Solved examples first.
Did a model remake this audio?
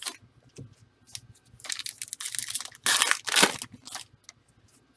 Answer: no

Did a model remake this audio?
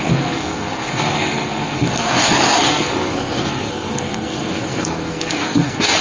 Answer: yes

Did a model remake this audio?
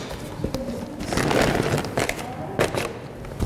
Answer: no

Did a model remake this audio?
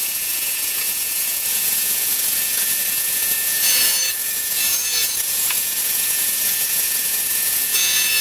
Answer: yes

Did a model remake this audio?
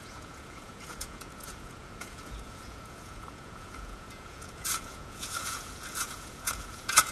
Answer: yes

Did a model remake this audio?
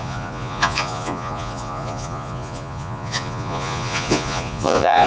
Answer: yes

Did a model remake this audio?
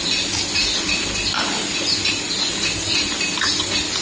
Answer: no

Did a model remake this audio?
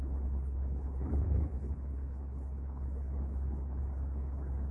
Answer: yes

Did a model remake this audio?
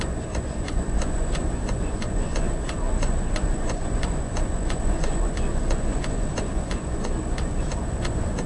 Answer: yes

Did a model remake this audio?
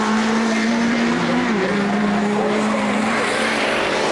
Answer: yes